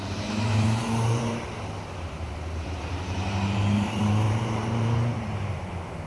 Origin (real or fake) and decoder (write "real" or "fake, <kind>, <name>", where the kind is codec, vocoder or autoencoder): fake, vocoder, BigVGAN v2